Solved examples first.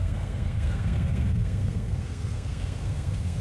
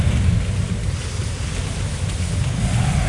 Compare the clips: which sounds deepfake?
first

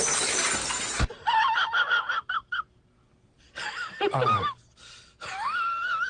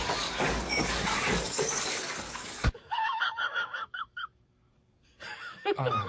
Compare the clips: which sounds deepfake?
second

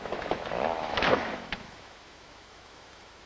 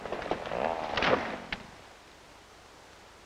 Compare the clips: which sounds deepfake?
first